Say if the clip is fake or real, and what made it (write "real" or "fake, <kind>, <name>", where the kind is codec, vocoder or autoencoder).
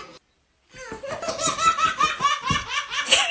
real